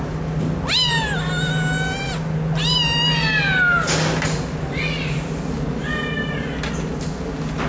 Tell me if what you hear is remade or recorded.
recorded